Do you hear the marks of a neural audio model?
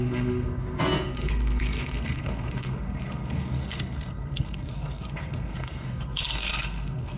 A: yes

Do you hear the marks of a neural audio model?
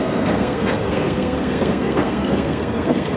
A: yes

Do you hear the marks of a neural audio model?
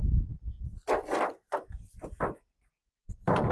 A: no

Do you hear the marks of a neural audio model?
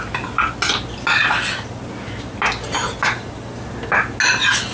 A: no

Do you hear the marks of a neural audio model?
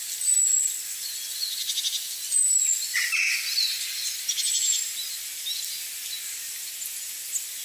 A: no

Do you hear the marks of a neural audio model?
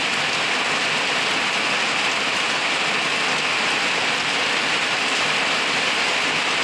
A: no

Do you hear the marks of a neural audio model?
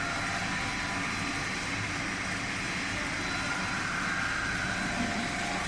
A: no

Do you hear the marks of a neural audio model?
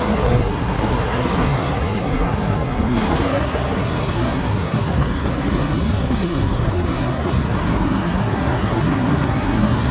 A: yes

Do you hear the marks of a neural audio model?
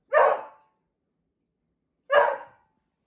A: no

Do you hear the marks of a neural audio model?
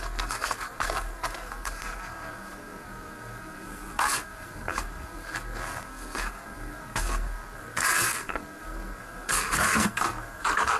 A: yes